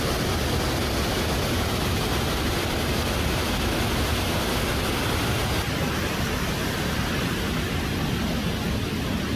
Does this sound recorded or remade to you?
recorded